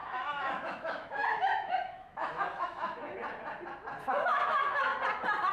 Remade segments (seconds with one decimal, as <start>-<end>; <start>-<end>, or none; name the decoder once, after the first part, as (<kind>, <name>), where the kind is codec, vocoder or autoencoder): 0.0-3.2 (autoencoder, DAC-VAE); 4.1-4.9